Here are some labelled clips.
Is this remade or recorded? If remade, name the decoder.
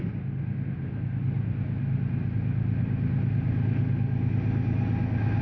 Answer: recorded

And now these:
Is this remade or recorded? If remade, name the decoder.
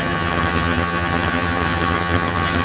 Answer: remade, vocoder, HiFi-GAN